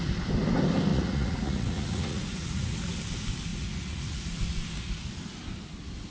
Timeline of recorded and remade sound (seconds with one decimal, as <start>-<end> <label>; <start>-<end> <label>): 0.0-0.9 recorded; 0.9-2.9 remade; 2.9-3.5 recorded; 3.5-4.2 remade; 4.2-6.1 recorded